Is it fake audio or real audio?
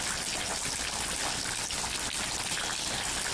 real